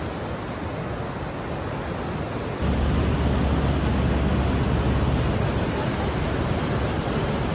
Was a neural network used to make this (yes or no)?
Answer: no